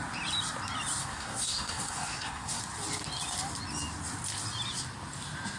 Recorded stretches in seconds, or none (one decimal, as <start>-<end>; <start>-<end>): 0.0-1.0; 2.6-5.6